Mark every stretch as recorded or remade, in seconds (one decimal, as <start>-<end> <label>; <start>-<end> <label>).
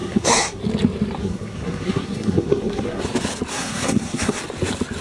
0.0-0.6 remade; 0.6-1.2 recorded; 1.2-3.0 remade; 3.0-3.5 recorded; 3.5-4.4 remade; 4.4-5.0 recorded